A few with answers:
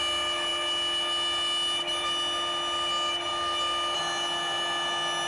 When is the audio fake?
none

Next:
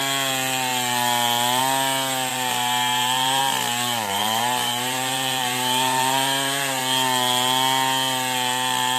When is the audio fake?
2.3-3.4 (vocoder, BigVGAN v2); 4.1-6.8

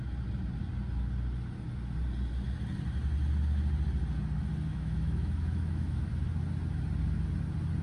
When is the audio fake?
4.7-6.1 (autoencoder, DAC-VAE)

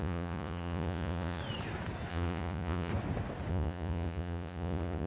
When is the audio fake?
0.0-1.4 (vocoder, Vocos); 2.1-2.9; 3.5-5.1

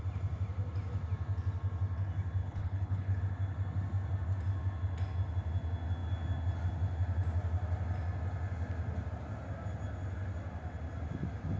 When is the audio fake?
2.4-3.2 (codec, HILCodec)

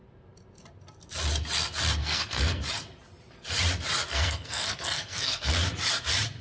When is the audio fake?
2.0-2.6 (codec, SNAC); 4.1-5.5

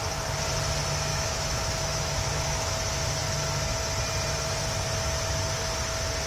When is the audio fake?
1.1-2.7 (autoencoder, DAC-VAE)